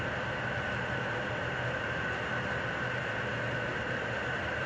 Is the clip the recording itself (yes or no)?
yes